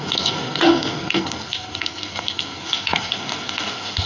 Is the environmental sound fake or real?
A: fake